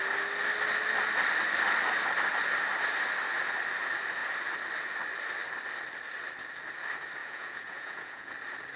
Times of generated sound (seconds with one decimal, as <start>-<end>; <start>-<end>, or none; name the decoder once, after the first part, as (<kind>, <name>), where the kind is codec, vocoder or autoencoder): 7.2-8.3 (vocoder, Vocos)